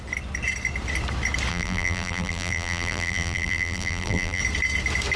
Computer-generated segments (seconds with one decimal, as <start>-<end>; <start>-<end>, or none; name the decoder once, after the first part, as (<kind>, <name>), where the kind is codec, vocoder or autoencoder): 1.5-4.4 (vocoder, BigVGAN v2)